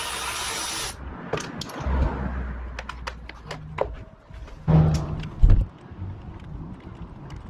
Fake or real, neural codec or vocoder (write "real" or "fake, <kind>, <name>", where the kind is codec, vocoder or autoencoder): real